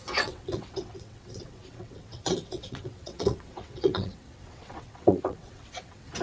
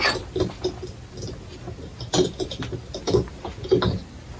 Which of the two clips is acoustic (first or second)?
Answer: second